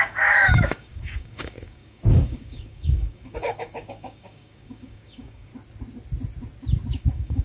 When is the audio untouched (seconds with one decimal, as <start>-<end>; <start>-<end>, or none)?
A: 5.5-6.9